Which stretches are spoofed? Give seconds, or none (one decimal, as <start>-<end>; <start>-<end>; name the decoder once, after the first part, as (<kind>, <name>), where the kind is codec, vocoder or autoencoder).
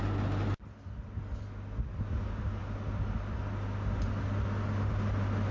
none